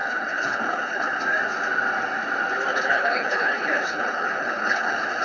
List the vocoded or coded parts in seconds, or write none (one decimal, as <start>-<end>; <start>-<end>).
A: 0.0-1.2; 2.7-5.2